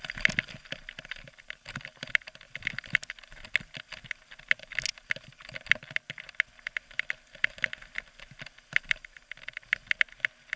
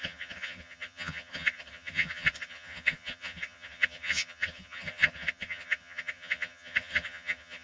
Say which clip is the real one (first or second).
first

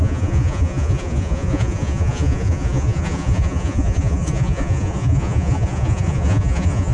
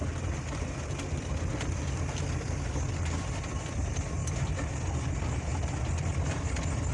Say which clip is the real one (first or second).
second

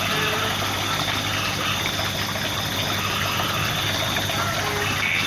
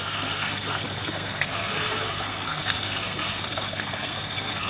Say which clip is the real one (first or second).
first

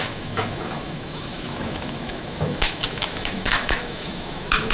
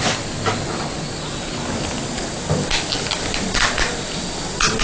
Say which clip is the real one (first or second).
second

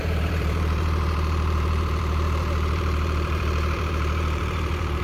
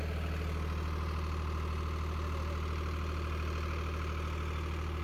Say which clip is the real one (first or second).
second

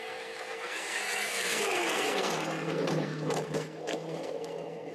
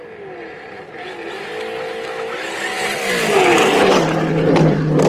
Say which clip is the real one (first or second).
second